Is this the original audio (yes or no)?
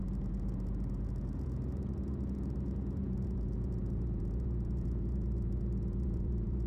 no